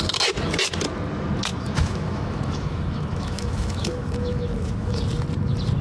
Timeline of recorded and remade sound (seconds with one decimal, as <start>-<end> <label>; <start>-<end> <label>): 0.0-1.5 recorded; 1.5-5.0 remade; 5.0-5.8 recorded